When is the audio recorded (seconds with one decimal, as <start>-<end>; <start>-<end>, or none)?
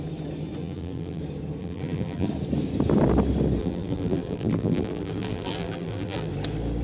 0.0-0.6; 1.2-1.6; 2.3-3.6; 6.3-6.8